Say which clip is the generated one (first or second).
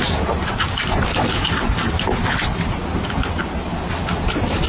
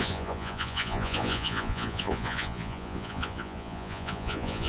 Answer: second